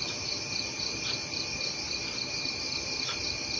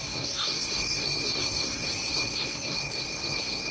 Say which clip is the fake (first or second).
second